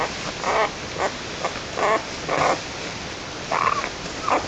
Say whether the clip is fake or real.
fake